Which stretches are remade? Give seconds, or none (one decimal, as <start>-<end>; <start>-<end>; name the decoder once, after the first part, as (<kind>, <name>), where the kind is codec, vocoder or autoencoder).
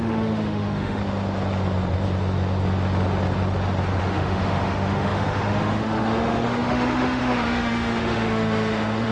0.0-1.0 (autoencoder, DAC-VAE); 4.0-9.1